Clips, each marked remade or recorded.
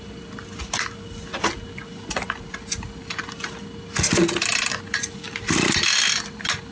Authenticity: recorded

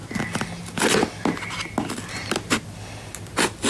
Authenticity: recorded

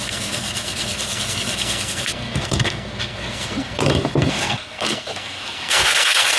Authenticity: remade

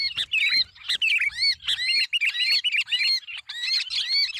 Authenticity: recorded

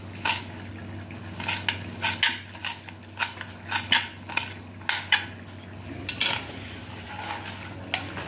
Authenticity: recorded